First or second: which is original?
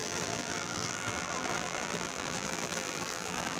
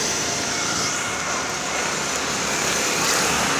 second